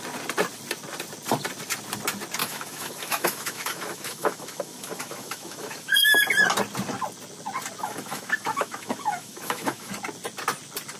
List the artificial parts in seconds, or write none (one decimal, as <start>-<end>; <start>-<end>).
2.4-6.2; 7.8-9.9